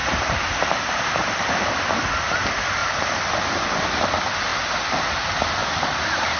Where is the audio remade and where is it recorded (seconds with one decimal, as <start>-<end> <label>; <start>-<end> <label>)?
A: 0.0-1.8 remade; 1.8-5.6 recorded; 5.6-6.4 remade